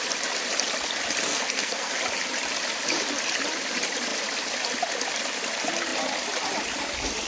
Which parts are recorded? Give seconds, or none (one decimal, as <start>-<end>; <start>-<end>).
0.0-1.3; 1.9-7.3